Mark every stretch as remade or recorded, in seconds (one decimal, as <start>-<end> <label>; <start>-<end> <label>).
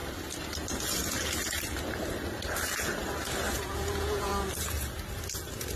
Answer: 0.0-3.5 recorded; 3.5-4.3 remade; 4.3-5.8 recorded